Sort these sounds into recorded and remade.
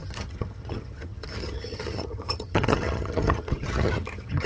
remade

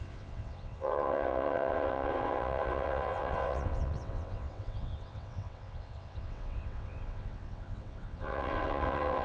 remade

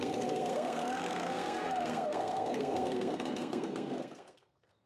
remade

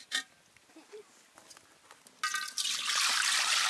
recorded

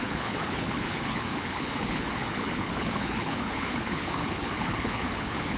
remade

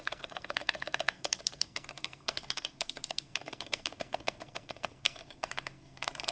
remade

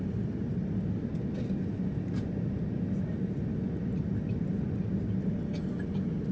recorded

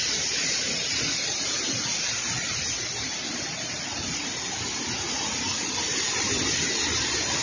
recorded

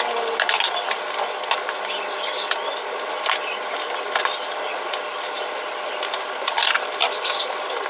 recorded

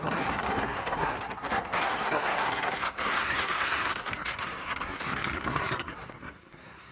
remade